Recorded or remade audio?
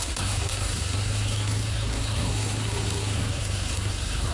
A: remade